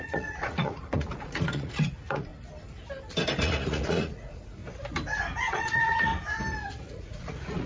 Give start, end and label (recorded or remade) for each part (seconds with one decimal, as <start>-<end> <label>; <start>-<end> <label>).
0.0-2.3 remade; 2.3-3.4 recorded; 3.4-4.6 remade; 4.6-5.5 recorded; 5.5-6.1 remade; 6.1-6.9 recorded; 6.9-7.7 remade